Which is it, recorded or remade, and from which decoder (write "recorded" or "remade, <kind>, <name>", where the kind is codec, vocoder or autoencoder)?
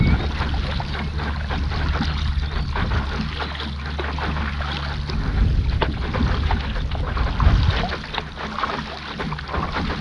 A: recorded